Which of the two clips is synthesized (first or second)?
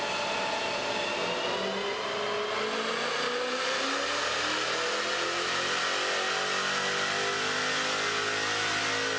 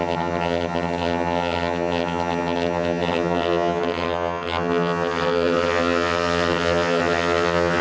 second